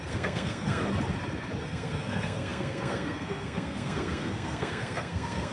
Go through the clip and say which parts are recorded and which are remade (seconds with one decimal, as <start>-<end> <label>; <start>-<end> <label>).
0.0-0.8 remade; 0.8-1.6 recorded; 1.6-5.5 remade